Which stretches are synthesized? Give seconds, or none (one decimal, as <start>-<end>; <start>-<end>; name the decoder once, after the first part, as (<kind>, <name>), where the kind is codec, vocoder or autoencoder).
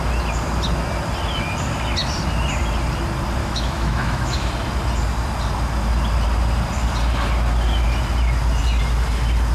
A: 3.4-4.5 (autoencoder, DAC-VAE)